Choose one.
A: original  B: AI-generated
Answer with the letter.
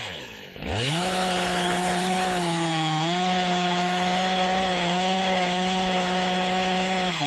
B